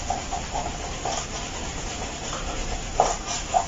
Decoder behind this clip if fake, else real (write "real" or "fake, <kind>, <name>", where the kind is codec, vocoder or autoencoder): real